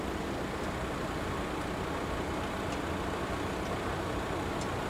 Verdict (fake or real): real